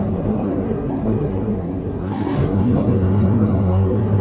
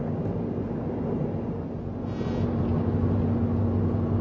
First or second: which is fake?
first